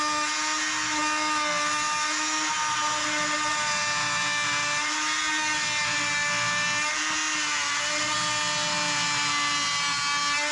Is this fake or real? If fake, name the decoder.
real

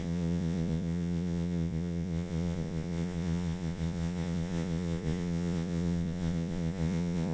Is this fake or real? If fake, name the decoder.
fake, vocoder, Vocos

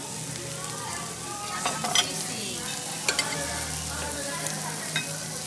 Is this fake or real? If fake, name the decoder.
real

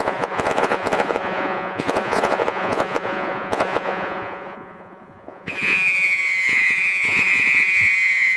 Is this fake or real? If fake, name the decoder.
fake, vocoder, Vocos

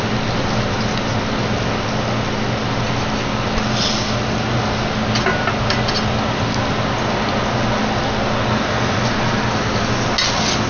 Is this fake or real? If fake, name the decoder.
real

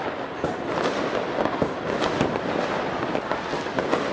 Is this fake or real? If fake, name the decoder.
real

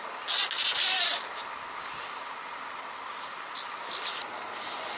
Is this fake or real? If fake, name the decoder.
real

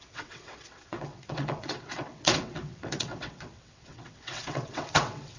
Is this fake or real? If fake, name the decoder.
fake, vocoder, WaveNeXt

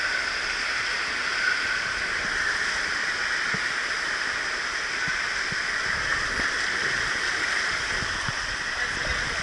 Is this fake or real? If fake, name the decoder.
real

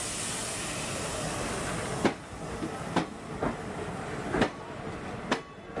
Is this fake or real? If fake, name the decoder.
real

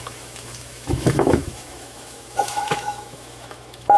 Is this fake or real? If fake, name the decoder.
fake, autoencoder, DAC-VAE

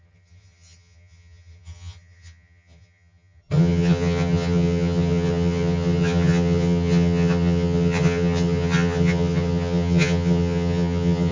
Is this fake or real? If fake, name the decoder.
fake, vocoder, HiFi-GAN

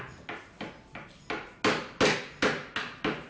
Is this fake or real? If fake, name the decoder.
real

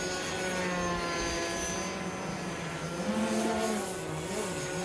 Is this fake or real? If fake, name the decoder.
real